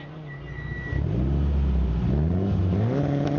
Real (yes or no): yes